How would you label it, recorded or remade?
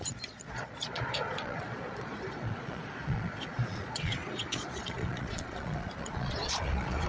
remade